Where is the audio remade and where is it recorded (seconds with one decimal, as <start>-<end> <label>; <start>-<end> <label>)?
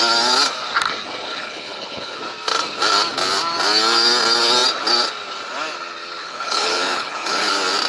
0.0-1.3 recorded; 1.3-2.2 remade; 2.2-6.2 recorded; 6.2-7.5 remade; 7.5-7.9 recorded